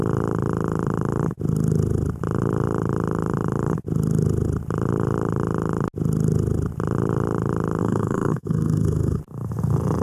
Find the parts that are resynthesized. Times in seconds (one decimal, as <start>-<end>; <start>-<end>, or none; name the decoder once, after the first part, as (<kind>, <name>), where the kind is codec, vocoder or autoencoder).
7.8-9.2 (codec, SNAC)